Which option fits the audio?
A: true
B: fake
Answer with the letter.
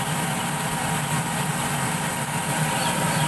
A